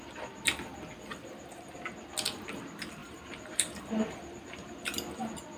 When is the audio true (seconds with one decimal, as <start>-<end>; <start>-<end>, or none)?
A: 0.0-1.1; 1.9-3.0; 4.8-5.6